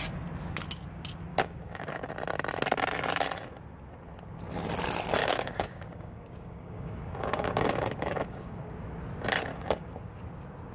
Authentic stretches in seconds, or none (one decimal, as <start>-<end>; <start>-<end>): 0.0-1.3; 2.1-5.2; 8.7-9.5; 10.1-10.7